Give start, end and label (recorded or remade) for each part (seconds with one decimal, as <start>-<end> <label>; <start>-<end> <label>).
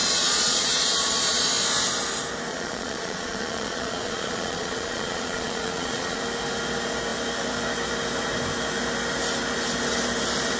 0.0-1.5 remade; 1.5-2.5 recorded; 2.5-6.2 remade; 6.2-10.6 recorded